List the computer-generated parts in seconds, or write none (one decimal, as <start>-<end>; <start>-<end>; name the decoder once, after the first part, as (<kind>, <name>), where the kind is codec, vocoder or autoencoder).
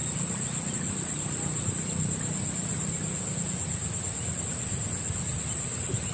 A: 0.0-6.1 (vocoder, BigVGAN v2)